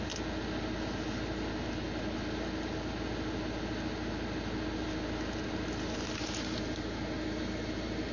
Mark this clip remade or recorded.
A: recorded